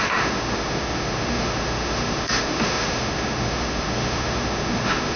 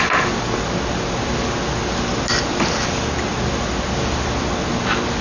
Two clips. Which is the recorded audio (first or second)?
second